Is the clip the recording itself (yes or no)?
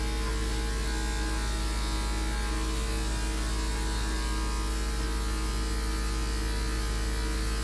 yes